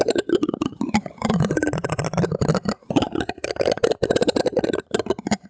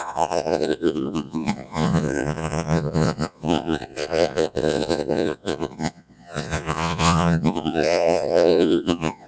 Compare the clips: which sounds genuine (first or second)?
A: first